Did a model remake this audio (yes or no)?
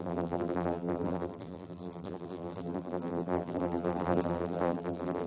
yes